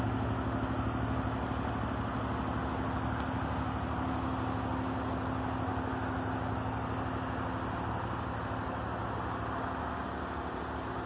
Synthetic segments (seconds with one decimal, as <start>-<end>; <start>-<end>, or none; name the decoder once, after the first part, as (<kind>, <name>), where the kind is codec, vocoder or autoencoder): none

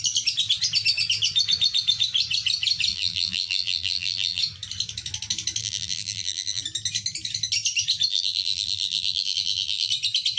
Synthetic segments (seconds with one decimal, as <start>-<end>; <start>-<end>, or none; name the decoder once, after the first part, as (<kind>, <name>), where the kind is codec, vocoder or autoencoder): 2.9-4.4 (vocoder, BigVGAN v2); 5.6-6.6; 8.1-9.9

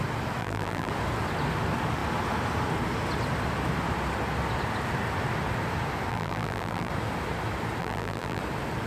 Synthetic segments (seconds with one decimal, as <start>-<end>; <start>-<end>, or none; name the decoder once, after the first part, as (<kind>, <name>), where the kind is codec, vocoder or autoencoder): 0.4-0.9 (vocoder, BigVGAN v2); 6.1-6.9; 7.8-8.4